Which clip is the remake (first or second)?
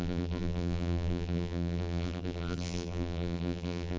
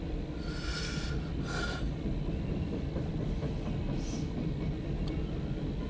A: first